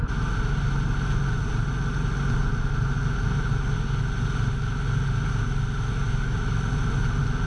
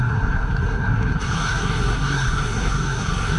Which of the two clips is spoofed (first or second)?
second